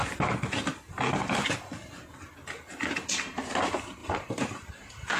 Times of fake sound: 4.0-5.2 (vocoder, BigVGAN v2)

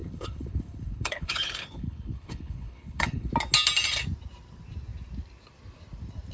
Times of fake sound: 0.0-3.3 (codec, HILCodec)

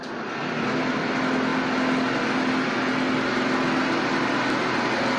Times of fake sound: none

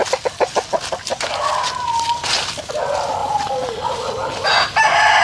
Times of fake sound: none

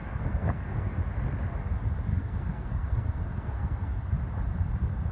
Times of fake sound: 0.0-1.0 (codec, SNAC); 2.1-4.1

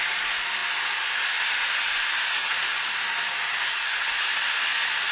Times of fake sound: none

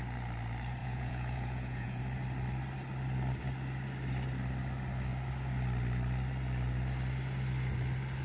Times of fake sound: 0.8-2.0 (vocoder, Vocos)